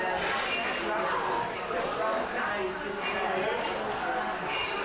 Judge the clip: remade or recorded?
recorded